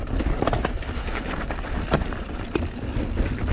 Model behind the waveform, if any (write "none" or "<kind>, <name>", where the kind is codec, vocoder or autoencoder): none